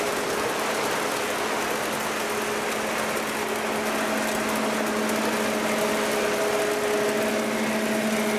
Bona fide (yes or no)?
yes